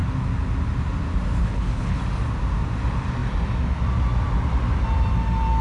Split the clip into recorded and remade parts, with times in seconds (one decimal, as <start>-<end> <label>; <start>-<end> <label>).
0.0-1.4 recorded; 1.4-2.0 remade; 2.0-5.6 recorded